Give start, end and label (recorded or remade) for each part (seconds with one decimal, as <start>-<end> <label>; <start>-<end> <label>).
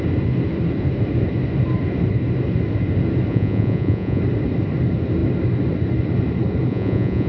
0.0-3.3 recorded; 3.3-4.2 remade; 4.2-6.7 recorded; 6.7-7.3 remade